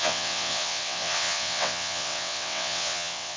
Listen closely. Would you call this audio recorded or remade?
remade